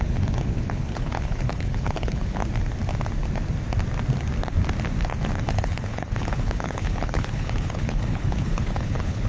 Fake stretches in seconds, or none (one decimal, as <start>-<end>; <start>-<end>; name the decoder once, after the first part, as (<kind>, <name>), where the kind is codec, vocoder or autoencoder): 0.0-2.4 (codec, HILCodec); 5.4-9.3

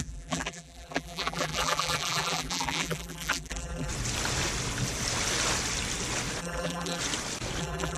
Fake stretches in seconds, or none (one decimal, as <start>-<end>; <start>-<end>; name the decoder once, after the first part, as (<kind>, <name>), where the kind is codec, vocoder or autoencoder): 0.0-3.9 (vocoder, BigVGAN v2); 6.4-7.0; 7.6-8.0

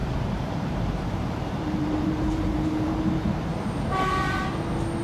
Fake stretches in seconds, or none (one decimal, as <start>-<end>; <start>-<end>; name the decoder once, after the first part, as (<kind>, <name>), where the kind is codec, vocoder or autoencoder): 0.0-3.0 (vocoder, BigVGAN v2); 3.5-4.5

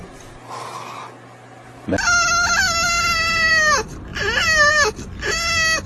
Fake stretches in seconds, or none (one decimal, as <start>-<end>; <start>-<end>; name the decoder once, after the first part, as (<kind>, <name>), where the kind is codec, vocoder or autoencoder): none

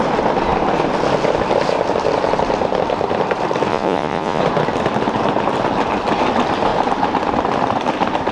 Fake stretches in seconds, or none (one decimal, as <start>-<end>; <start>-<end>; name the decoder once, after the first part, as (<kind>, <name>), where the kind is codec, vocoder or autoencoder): 3.7-4.4 (vocoder, Vocos)

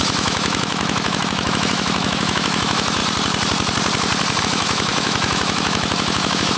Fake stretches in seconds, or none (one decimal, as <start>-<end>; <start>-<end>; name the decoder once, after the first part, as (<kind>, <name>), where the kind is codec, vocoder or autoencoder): 0.0-3.0 (autoencoder, DAC-VAE); 4.4-6.6